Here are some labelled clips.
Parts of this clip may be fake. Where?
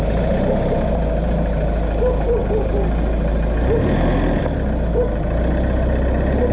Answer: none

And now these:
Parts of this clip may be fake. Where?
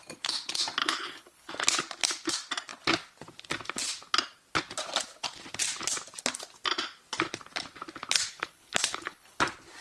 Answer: 0.8-1.5 (codec, HILCodec); 8.3-9.4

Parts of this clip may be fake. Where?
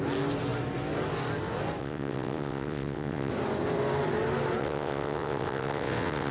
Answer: 1.8-3.3 (vocoder, WaveNeXt); 4.6-6.3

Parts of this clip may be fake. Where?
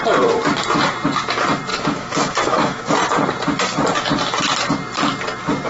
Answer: 1.7-2.8 (autoencoder, DAC-VAE)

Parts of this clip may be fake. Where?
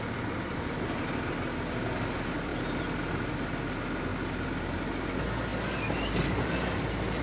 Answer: none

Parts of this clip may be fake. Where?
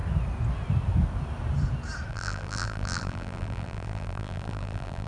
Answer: 2.1-5.1 (vocoder, BigVGAN v2)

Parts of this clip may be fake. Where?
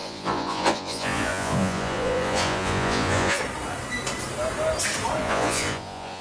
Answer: 0.0-3.4 (vocoder, Vocos); 5.2-6.2